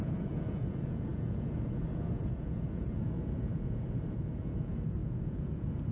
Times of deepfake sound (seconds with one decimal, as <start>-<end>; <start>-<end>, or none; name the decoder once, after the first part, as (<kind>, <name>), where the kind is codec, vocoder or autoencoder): 0.0-5.9 (vocoder, Vocos)